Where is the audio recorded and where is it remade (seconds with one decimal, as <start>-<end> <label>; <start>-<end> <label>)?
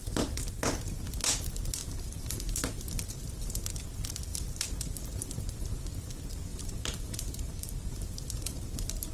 0.0-1.8 recorded; 1.8-2.5 remade; 2.5-6.5 recorded; 6.5-8.0 remade; 8.0-9.1 recorded